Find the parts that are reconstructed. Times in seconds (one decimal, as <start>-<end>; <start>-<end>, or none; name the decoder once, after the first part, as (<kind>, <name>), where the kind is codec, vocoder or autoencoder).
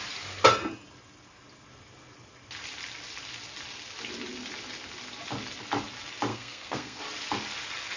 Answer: 6.3-7.0 (codec, SNAC)